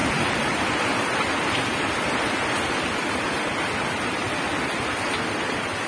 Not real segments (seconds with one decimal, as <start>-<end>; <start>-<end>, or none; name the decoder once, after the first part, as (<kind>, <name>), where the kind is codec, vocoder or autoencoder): none